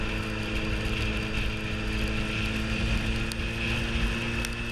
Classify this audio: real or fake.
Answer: real